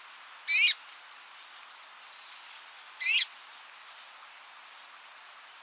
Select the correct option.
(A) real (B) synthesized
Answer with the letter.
A